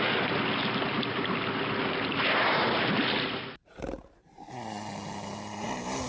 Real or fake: real